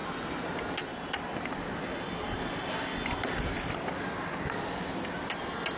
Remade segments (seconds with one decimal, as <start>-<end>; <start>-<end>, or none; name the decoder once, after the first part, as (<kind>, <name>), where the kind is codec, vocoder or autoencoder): none